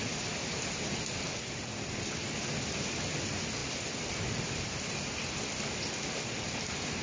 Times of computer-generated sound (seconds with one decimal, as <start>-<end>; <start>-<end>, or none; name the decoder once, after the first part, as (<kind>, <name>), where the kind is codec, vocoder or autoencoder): none